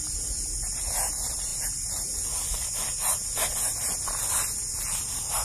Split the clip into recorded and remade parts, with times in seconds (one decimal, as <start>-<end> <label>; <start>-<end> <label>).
0.0-5.4 recorded